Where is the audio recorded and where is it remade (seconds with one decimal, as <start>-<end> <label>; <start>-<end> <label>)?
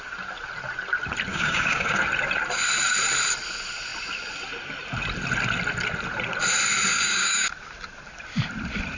0.0-1.3 recorded; 1.3-2.0 remade; 2.0-6.9 recorded; 6.9-7.5 remade; 7.5-9.0 recorded